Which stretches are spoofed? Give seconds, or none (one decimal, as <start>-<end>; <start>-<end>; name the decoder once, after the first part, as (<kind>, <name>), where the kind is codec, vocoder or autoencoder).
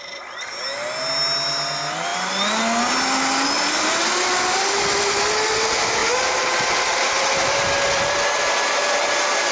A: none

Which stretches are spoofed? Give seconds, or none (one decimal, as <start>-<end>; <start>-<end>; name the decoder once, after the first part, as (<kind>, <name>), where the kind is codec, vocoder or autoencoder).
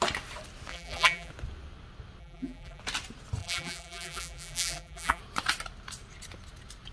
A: 0.7-1.3 (vocoder, BigVGAN v2); 2.2-2.8; 3.4-5.2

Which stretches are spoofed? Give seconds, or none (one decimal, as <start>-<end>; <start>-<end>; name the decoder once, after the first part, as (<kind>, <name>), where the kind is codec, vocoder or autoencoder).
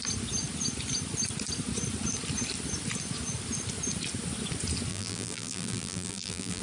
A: 4.9-6.6 (vocoder, BigVGAN v2)